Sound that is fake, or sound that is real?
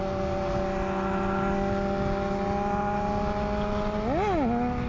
real